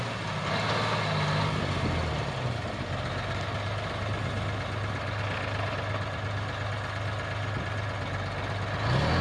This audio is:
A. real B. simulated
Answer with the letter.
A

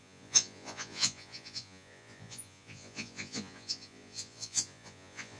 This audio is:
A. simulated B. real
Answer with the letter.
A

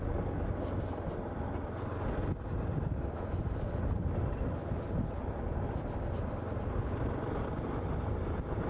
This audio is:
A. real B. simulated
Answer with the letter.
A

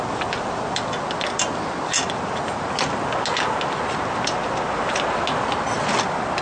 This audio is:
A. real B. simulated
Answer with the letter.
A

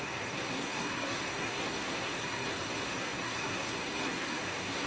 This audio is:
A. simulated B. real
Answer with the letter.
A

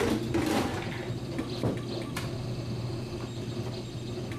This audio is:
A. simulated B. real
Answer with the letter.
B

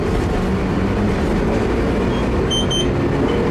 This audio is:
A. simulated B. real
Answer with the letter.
B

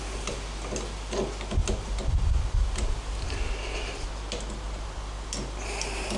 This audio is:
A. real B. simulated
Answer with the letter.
A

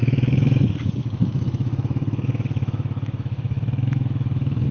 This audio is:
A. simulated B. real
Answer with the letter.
A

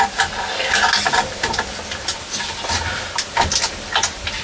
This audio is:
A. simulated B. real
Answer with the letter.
B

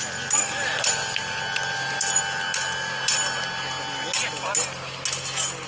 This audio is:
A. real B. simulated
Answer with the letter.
A